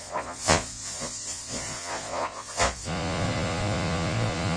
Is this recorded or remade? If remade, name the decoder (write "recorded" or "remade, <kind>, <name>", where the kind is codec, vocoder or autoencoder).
remade, vocoder, Vocos